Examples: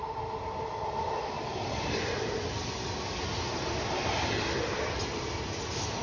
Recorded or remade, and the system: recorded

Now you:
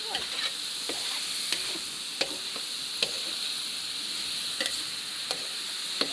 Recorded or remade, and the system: recorded